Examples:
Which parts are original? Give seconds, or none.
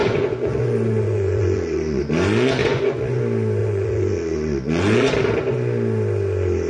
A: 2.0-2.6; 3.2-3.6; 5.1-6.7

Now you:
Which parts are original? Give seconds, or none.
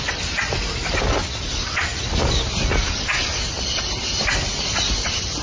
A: 0.0-5.4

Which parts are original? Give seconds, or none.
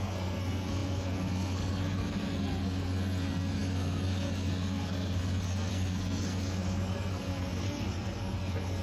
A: none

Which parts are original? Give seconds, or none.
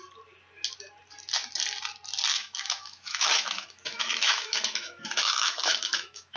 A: 0.0-2.3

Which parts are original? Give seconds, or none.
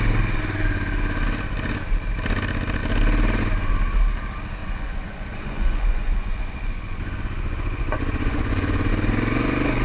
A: 0.0-4.6; 8.9-9.8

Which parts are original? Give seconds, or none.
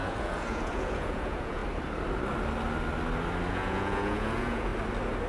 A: 1.6-3.5; 4.7-5.3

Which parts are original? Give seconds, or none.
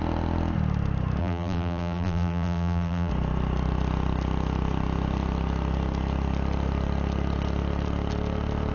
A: 0.0-1.2; 3.1-8.7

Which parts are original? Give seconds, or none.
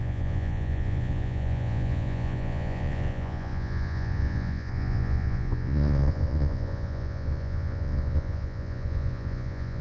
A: none